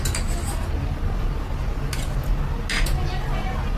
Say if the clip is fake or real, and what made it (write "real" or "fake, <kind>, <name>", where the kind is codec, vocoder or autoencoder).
real